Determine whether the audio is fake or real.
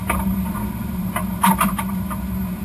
fake